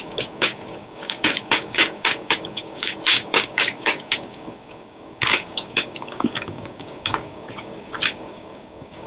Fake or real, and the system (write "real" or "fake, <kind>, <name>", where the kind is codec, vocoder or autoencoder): fake, codec, DAC